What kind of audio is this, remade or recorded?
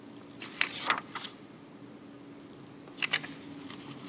recorded